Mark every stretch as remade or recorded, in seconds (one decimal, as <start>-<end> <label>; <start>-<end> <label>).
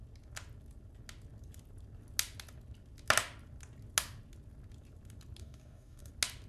0.0-5.4 recorded; 5.4-6.1 remade; 6.1-6.5 recorded